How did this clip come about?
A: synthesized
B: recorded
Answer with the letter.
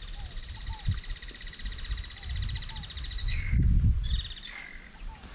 B